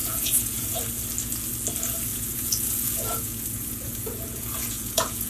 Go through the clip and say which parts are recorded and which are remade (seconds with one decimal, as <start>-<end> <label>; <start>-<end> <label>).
0.0-0.8 remade; 0.8-2.1 recorded; 2.1-5.3 remade